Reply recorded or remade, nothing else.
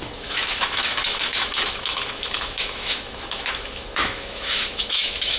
remade